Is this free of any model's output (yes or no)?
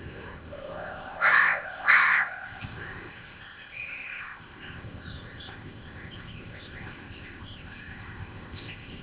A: no